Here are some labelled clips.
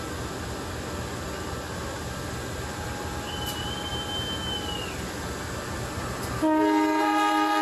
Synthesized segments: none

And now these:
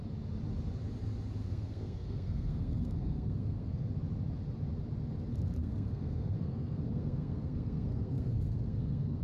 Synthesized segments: 1.4-3.9 (codec, SNAC); 5.6-9.2

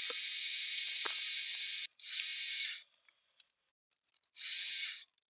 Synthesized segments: 0.4-1.4 (vocoder, BigVGAN v2); 2.3-3.7

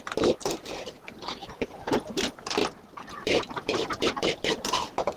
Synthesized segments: 0.0-2.6 (vocoder, BigVGAN v2); 3.1-5.2

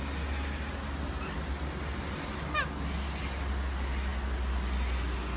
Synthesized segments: none

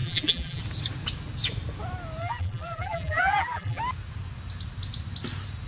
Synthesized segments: 0.0-0.6 (vocoder, BigVGAN v2); 2.2-3.8

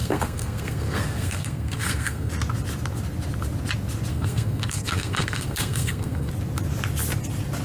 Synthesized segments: 0.0-2.3 (codec, SNAC); 4.1-6.3

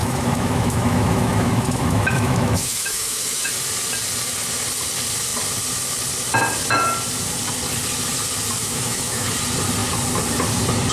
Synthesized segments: 0.0-3.5 (autoencoder, DAC-VAE); 8.6-9.3